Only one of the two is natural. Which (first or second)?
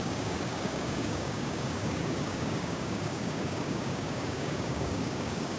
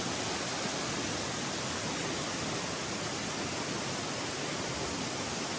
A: second